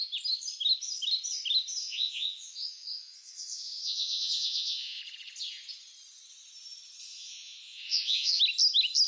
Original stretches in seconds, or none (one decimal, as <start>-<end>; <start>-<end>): 0.0-1.8; 5.0-7.0; 8.4-9.1